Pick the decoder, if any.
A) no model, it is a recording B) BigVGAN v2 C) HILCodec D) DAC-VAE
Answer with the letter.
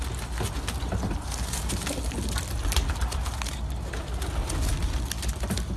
A